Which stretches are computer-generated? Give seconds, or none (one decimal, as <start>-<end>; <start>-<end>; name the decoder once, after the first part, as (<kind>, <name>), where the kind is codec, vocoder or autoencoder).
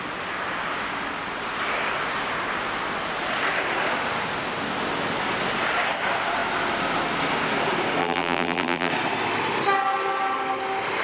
8.0-8.9 (vocoder, BigVGAN v2)